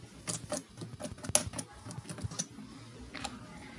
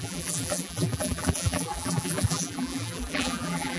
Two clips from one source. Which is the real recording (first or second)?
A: first